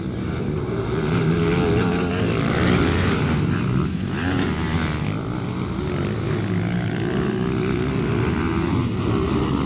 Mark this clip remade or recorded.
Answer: recorded